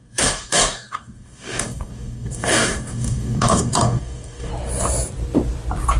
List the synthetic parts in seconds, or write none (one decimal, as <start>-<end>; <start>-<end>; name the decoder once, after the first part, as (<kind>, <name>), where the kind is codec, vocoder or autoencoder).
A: 0.0-4.5 (codec, DAC)